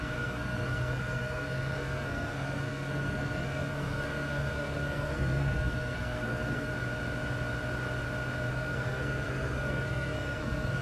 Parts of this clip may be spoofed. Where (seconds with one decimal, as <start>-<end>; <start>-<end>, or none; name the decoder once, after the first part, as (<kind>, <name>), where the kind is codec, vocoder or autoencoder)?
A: 0.0-6.7 (codec, SNAC); 8.5-10.8